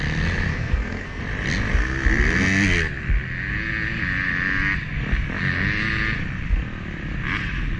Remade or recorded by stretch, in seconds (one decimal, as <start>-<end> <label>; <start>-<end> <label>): 0.0-0.5 recorded; 0.5-1.2 remade; 1.2-7.8 recorded